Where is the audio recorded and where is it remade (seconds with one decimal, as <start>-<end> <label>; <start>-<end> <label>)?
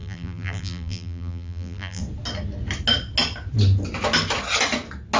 0.0-2.0 remade; 2.0-5.2 recorded